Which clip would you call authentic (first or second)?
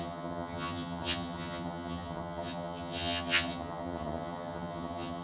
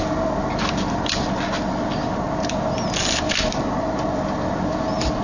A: second